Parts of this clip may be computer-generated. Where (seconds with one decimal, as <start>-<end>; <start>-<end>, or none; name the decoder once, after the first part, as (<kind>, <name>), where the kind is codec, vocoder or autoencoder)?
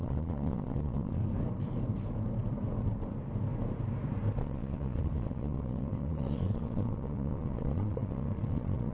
0.0-1.2 (vocoder, Vocos); 4.4-8.9